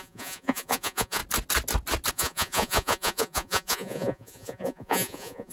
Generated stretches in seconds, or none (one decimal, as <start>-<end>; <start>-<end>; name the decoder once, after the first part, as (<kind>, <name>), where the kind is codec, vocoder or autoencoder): 0.0-1.2 (vocoder, Vocos); 2.1-5.5